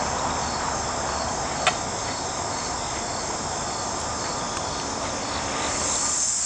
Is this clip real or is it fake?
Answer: real